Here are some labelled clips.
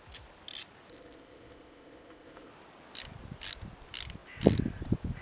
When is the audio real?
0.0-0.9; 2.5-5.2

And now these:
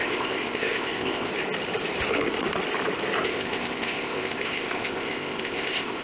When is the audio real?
1.3-3.2